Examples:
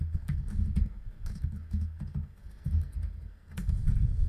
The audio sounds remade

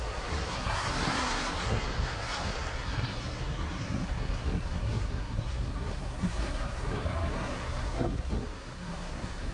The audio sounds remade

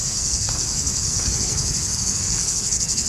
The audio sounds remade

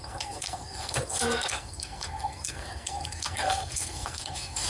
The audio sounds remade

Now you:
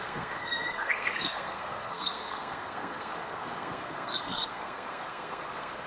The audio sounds remade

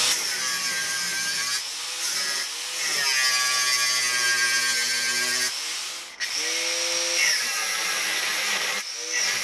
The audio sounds recorded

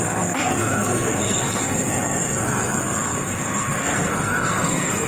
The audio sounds remade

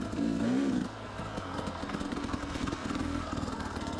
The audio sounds remade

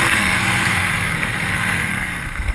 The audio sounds remade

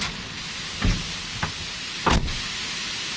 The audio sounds recorded